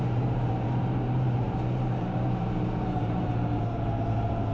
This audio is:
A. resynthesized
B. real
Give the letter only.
A